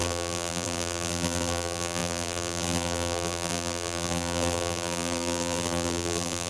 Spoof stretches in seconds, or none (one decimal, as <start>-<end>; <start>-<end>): 0.0-6.5